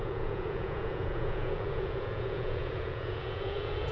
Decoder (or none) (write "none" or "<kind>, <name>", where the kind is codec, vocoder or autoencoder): vocoder, Vocos